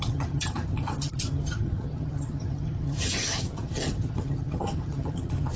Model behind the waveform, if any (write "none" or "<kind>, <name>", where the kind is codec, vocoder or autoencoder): vocoder, HiFi-GAN